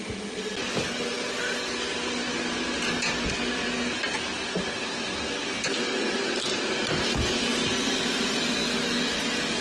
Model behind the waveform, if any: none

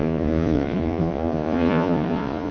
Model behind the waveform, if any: vocoder, Vocos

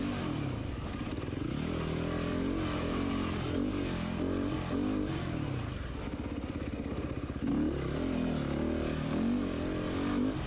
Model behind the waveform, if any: none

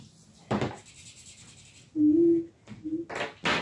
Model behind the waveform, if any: none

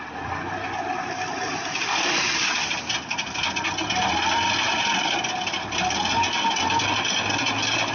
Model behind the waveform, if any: none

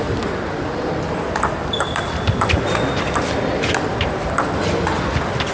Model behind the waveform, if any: none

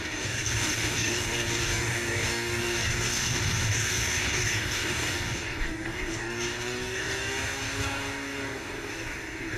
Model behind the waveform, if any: codec, DAC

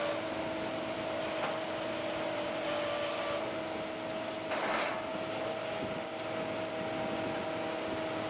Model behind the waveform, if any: none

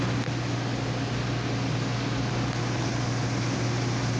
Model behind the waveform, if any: none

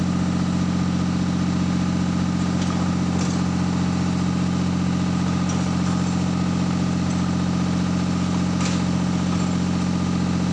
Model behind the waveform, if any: none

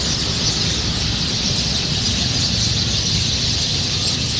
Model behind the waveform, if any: vocoder, BigVGAN v2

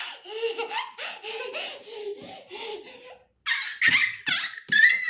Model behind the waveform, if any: none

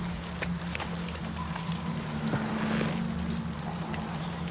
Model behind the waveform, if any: none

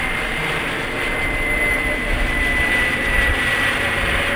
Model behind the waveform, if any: vocoder, BigVGAN v2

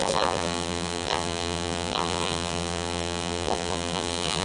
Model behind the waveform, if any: vocoder, BigVGAN v2